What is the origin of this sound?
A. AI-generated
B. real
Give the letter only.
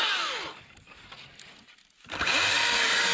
B